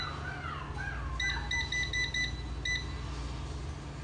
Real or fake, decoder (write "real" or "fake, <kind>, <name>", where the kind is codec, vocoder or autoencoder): real